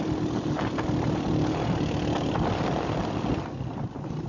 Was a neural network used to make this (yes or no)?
no